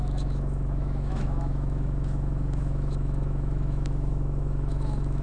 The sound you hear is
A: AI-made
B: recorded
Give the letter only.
A